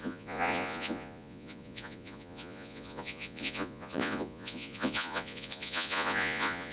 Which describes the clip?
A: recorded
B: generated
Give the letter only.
B